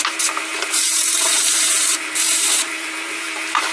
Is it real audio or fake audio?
fake